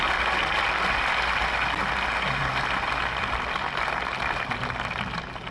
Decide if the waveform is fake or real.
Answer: real